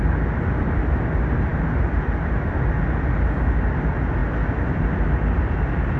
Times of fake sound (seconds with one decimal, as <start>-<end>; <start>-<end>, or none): none